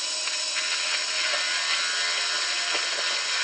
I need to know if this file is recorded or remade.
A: recorded